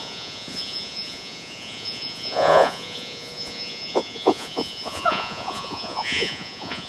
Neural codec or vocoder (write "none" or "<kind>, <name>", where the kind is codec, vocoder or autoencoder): vocoder, Vocos